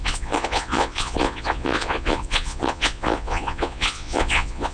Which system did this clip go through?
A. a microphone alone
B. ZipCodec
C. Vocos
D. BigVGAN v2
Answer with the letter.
C